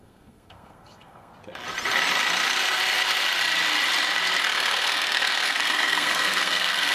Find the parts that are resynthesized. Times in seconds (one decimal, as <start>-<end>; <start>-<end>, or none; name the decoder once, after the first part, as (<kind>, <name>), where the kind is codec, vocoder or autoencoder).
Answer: 0.0-1.3 (codec, SNAC); 4.4-6.9